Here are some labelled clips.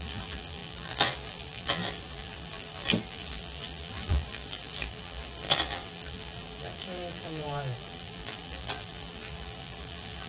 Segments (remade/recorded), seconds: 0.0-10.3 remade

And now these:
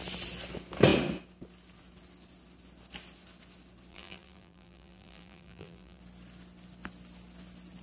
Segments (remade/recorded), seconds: 0.0-3.9 recorded; 3.9-6.0 remade; 6.0-7.8 recorded

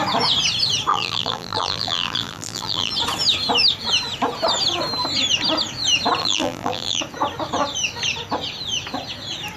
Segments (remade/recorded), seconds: 0.0-0.9 recorded; 0.9-2.9 remade; 2.9-6.2 recorded; 6.2-7.0 remade; 7.0-9.6 recorded